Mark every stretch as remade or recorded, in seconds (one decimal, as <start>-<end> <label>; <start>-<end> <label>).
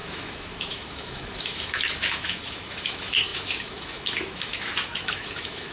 0.0-5.7 remade